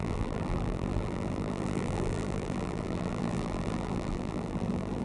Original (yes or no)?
no